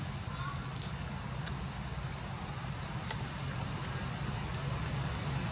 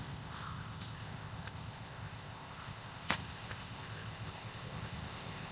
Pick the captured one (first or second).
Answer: first